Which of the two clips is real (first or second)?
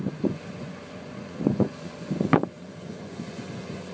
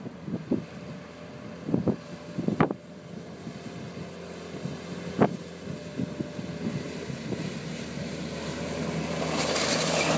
second